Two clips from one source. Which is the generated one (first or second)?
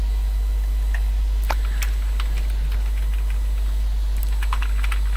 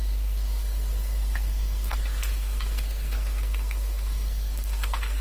second